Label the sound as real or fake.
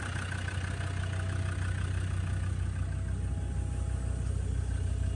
real